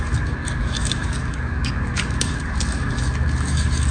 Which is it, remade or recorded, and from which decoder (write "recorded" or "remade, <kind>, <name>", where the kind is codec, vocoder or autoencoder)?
remade, codec, DAC